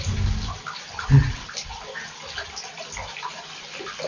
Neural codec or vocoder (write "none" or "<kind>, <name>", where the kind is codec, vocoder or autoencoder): none